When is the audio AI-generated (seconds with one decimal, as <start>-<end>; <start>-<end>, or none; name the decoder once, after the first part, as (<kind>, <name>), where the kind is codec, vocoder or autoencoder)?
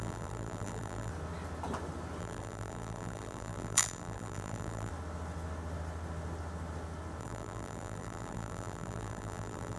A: 0.0-1.1 (vocoder, BigVGAN v2); 2.2-4.9; 7.2-9.8